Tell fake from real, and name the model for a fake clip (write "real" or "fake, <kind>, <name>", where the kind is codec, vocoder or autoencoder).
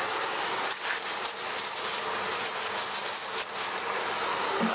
real